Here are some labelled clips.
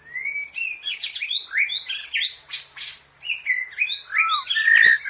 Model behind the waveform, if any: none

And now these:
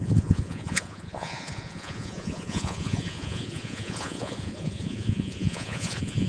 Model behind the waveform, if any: vocoder, Vocos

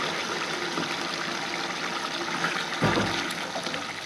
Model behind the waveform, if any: none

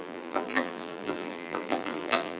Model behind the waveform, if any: vocoder, BigVGAN v2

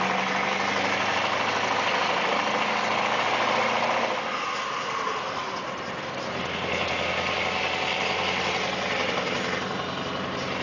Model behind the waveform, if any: none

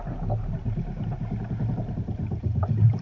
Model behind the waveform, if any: none